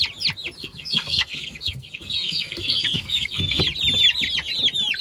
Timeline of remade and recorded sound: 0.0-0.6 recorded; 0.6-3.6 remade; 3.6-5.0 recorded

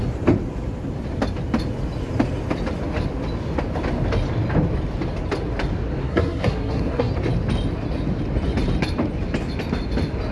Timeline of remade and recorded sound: 0.0-6.0 recorded; 6.0-7.1 remade; 7.1-10.3 recorded

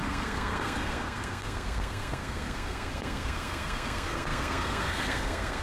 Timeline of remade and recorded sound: 0.0-5.6 remade

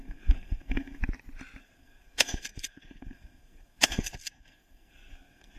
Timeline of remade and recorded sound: 0.0-1.0 remade; 1.0-1.6 recorded; 1.6-5.6 remade

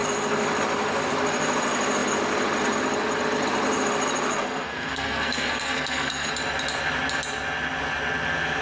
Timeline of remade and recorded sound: 0.0-4.3 recorded; 4.3-6.3 remade; 6.3-8.6 recorded

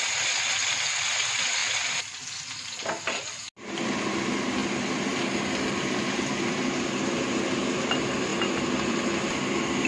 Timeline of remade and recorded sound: 0.0-9.9 recorded

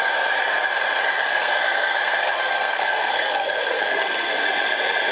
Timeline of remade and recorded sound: 0.0-1.3 recorded; 1.3-4.4 remade; 4.4-5.1 recorded

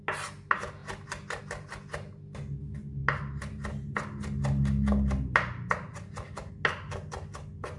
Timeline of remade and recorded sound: 0.0-7.8 recorded